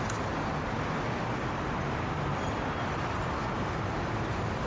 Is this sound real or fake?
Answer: real